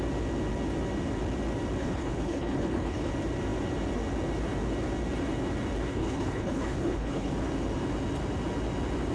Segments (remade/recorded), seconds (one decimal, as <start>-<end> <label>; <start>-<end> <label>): 0.0-1.8 recorded; 1.8-3.1 remade; 3.1-5.9 recorded; 5.9-7.3 remade; 7.3-9.1 recorded